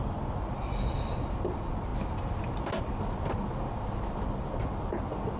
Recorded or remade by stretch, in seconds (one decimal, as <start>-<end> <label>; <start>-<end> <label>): 0.0-5.4 recorded